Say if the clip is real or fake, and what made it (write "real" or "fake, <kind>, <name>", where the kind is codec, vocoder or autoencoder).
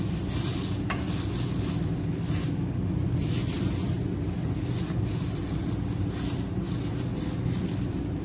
real